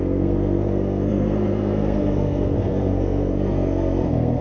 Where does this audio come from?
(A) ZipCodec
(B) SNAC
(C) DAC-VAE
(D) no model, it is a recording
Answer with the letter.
B